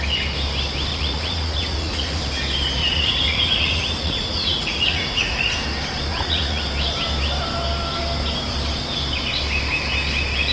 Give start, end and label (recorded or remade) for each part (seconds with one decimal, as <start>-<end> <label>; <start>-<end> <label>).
0.0-0.9 recorded; 0.9-2.2 remade; 2.2-2.8 recorded; 2.8-5.5 remade; 5.5-6.1 recorded; 6.1-6.6 remade; 6.6-10.5 recorded